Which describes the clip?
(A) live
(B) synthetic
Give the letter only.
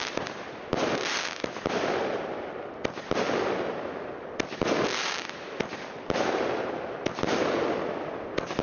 A